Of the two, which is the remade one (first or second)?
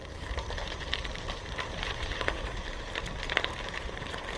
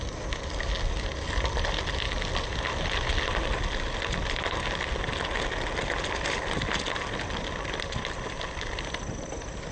first